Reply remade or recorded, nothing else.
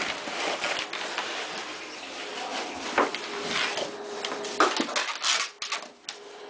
recorded